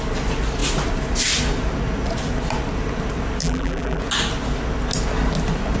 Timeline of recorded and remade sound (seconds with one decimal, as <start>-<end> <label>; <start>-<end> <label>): 0.0-3.4 recorded; 3.4-4.0 remade; 4.0-5.8 recorded